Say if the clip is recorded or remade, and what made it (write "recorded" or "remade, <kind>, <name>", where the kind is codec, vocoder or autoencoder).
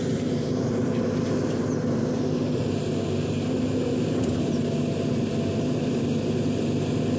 recorded